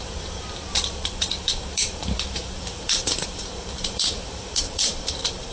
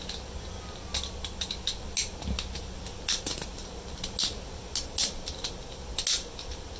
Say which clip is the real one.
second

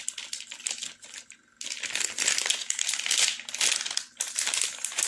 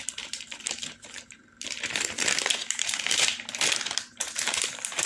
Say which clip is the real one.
first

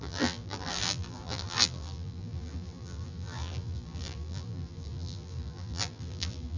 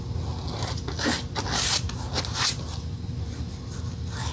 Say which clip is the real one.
second